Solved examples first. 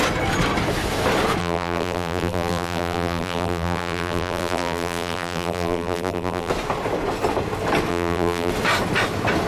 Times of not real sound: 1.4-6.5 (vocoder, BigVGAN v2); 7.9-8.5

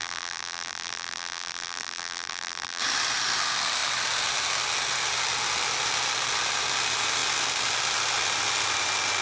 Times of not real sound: 0.0-2.8 (vocoder, BigVGAN v2)

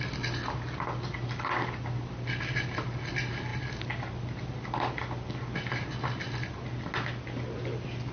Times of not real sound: none

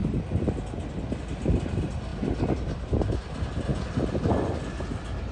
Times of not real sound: 0.0-1.2 (vocoder, BigVGAN v2); 3.7-4.3